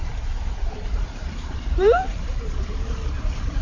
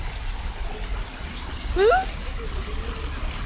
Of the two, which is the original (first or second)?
second